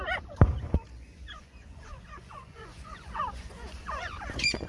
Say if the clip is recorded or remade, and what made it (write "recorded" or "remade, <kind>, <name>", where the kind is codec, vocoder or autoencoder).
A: remade, vocoder, Vocos